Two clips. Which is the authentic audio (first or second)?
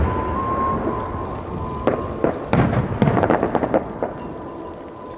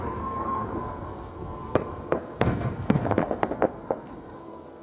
first